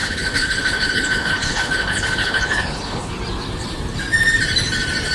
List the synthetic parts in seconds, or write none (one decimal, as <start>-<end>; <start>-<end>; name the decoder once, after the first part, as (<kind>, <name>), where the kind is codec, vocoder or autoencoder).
0.0-3.1 (codec, HILCodec)